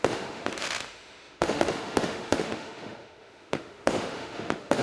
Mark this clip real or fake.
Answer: fake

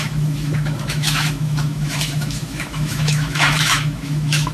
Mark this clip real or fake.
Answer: fake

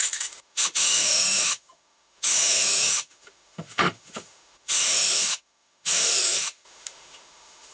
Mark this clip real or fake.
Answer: fake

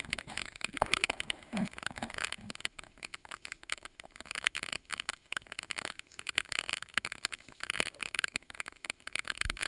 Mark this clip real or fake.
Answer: fake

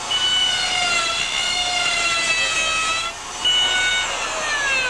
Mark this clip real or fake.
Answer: real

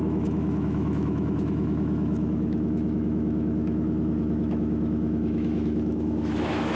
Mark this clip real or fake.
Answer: fake